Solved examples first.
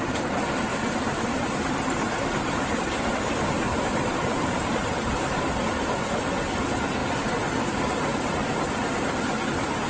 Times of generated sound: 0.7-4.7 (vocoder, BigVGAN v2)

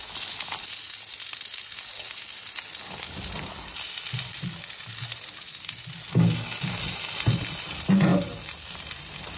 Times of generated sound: none